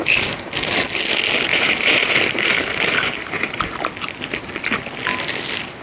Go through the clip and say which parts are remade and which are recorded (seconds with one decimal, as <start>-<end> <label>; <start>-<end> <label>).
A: 0.0-1.5 recorded; 1.5-3.9 remade; 3.9-5.8 recorded